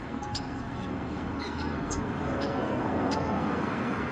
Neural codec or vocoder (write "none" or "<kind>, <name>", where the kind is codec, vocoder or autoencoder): codec, SNAC